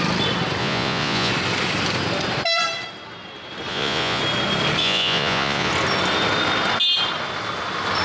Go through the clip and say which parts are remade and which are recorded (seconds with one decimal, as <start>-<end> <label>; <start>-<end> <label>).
0.0-0.6 recorded; 0.6-1.3 remade; 1.3-3.7 recorded; 3.7-4.2 remade; 4.2-4.8 recorded; 4.8-5.7 remade; 5.7-8.0 recorded